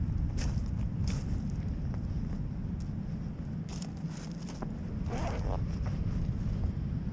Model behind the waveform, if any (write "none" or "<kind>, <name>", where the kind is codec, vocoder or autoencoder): none